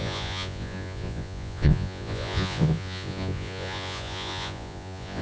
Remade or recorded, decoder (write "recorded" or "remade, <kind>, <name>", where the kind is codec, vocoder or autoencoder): remade, vocoder, Vocos